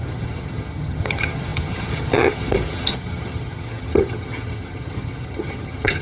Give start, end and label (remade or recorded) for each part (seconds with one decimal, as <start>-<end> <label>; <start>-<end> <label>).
0.0-6.0 remade